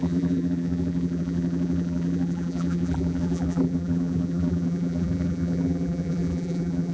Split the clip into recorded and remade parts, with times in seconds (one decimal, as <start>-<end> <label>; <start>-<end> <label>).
0.0-6.9 remade